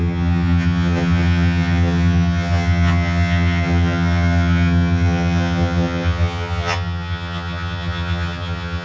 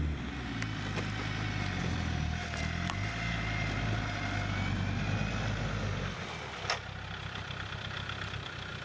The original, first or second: second